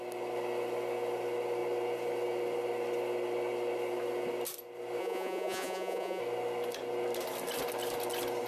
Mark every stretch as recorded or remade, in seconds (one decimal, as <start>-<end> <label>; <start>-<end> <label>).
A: 0.0-5.0 recorded; 5.0-6.2 remade; 6.2-8.5 recorded